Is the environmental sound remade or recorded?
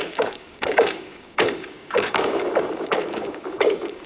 remade